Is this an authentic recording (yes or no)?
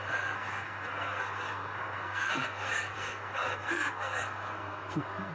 no